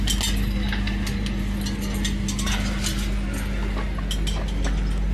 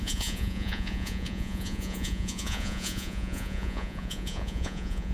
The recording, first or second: first